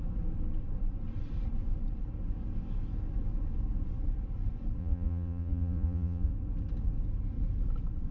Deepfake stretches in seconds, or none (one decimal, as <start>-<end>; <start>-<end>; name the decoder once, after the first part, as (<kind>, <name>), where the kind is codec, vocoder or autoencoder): 4.8-6.3 (vocoder, Vocos)